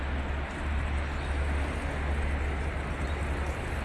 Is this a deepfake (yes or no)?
no